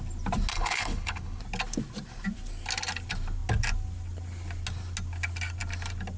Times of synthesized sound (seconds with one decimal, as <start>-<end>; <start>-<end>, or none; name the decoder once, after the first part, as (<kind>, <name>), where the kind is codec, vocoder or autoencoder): 0.5-1.4 (codec, HILCodec)